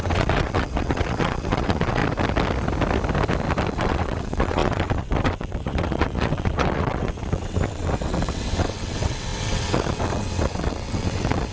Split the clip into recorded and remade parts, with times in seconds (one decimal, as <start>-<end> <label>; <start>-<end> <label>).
0.0-2.0 remade; 2.0-3.7 recorded; 3.7-11.5 remade